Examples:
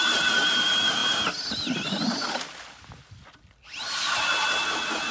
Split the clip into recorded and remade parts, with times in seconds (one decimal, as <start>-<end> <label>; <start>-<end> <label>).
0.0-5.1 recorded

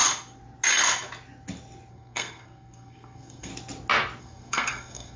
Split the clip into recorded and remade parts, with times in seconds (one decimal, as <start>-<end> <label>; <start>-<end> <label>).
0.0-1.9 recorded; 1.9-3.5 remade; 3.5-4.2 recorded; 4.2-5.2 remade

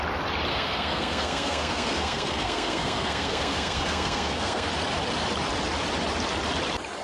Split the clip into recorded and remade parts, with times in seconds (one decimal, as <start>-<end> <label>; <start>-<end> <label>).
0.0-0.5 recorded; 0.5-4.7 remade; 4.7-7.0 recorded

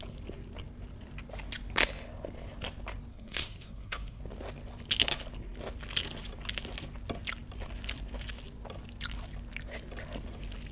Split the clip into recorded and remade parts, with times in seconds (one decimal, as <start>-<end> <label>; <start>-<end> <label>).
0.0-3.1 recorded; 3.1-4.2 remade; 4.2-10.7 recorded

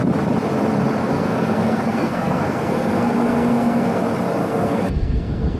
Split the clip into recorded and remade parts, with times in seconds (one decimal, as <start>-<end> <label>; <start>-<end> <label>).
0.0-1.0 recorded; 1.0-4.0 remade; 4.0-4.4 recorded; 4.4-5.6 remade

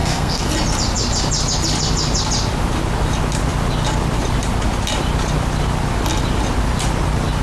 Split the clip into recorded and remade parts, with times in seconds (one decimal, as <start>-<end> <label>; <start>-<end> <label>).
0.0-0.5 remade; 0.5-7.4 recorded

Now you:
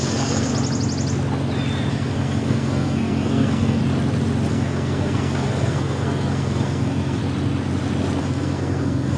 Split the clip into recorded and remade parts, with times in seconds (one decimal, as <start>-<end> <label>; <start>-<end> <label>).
0.0-0.5 remade; 0.5-1.9 recorded; 1.9-3.8 remade; 3.8-4.5 recorded; 4.5-7.2 remade; 7.2-8.2 recorded; 8.2-9.2 remade

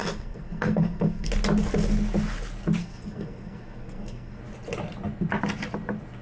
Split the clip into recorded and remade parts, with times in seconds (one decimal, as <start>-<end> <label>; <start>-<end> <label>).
0.0-1.3 remade; 1.3-2.8 recorded; 2.8-4.4 remade; 4.4-6.2 recorded